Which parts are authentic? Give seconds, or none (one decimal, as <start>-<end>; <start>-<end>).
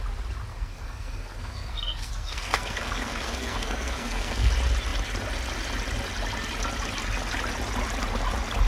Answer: 0.0-0.5; 4.5-8.7